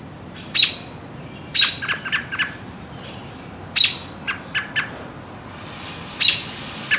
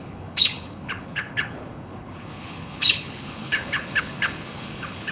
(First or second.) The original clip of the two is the first